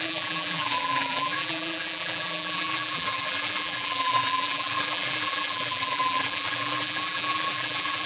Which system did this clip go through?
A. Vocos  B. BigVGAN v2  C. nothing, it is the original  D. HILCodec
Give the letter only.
B